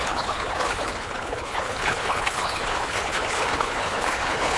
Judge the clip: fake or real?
fake